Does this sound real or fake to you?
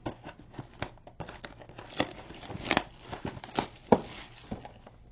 real